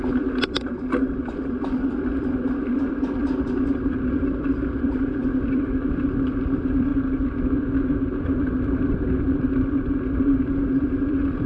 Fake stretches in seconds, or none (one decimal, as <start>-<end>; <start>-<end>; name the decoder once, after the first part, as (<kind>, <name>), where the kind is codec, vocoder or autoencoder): 0.0-6.9 (vocoder, BigVGAN v2); 10.4-11.5